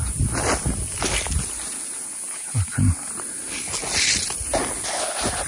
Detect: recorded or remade recorded